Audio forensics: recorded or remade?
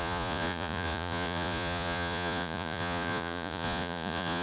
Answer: remade